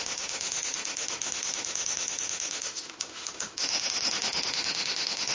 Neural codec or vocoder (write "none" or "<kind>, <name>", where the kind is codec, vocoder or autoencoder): autoencoder, DAC-VAE